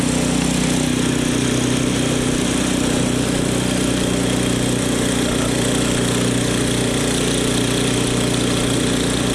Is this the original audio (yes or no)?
yes